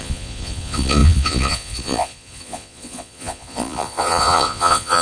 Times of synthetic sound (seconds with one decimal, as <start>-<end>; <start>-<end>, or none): 0.0-5.0